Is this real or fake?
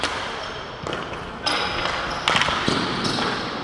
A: real